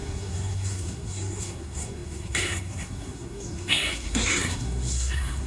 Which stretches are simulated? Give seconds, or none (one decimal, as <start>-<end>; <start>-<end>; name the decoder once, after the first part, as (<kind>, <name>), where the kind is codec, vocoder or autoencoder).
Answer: 0.0-5.5 (codec, SNAC)